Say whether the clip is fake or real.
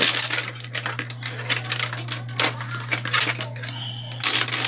real